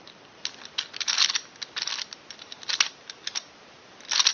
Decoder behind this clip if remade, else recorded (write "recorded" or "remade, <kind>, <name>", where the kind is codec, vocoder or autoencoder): recorded